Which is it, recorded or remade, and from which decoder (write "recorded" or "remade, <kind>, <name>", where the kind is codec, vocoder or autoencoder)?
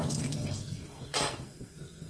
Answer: remade, codec, SNAC